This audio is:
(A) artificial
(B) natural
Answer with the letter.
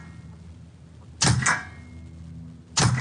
B